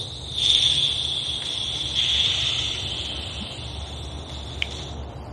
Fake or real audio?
real